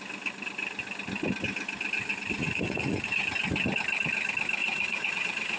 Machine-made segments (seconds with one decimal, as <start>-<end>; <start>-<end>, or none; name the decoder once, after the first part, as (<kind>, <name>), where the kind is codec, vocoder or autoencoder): 2.4-3.2 (vocoder, Vocos); 4.6-5.6